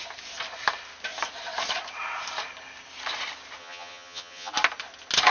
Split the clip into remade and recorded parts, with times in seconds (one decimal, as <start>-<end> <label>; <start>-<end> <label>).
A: 0.0-3.6 recorded; 3.6-4.5 remade; 4.5-5.3 recorded